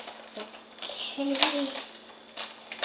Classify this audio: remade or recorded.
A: recorded